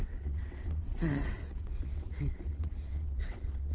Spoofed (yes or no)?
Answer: yes